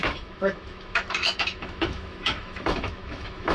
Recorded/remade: remade